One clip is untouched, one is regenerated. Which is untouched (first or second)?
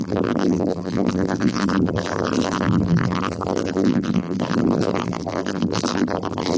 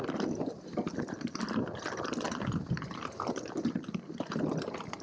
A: second